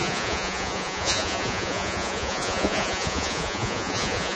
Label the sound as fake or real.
fake